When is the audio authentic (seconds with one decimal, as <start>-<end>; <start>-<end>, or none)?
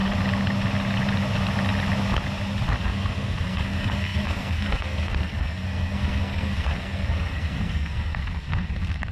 0.0-2.8